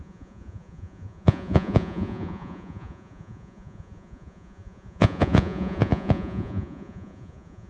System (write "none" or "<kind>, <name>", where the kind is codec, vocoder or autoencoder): vocoder, Vocos